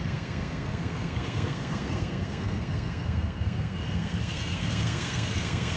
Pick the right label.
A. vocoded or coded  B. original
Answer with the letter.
A